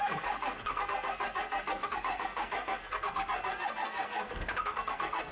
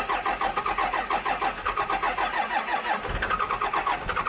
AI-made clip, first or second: first